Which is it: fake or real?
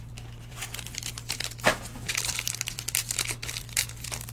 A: fake